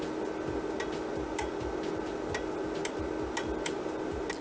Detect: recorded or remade recorded